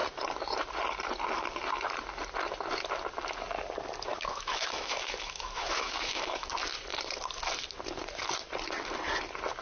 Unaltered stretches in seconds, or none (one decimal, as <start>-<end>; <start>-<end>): 0.0-4.1; 6.5-9.6